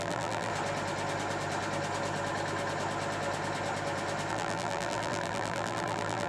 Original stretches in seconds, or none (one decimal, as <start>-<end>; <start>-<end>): 0.5-4.3